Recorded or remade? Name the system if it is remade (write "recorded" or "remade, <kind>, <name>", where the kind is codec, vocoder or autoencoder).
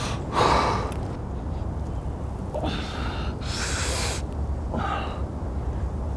recorded